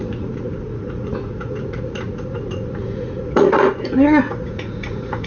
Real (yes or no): no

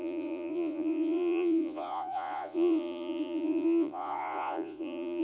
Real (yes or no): no